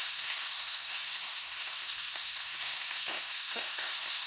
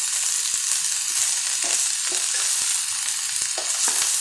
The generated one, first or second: first